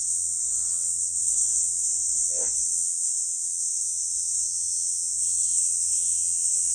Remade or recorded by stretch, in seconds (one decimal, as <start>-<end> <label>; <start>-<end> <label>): 0.0-6.7 remade